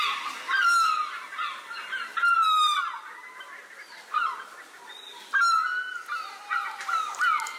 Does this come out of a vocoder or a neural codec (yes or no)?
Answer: no